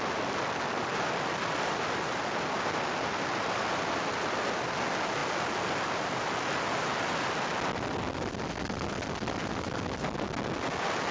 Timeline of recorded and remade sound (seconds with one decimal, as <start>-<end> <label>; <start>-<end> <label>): 0.0-11.1 recorded

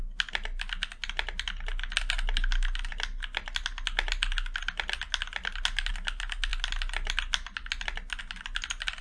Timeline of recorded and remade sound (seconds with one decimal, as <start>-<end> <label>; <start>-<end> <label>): 0.0-9.0 recorded

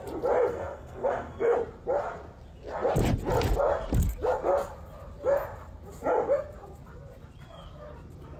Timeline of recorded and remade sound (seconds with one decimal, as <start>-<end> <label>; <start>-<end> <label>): 0.0-0.5 recorded; 0.5-1.5 remade; 1.5-8.4 recorded

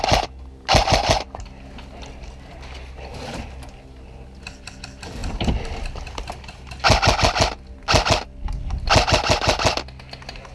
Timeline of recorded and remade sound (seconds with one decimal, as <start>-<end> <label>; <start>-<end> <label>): 0.0-10.5 recorded

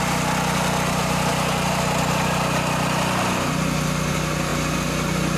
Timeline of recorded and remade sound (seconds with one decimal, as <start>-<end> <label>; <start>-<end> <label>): 0.0-1.3 remade; 1.3-4.1 recorded; 4.1-4.5 remade; 4.5-5.4 recorded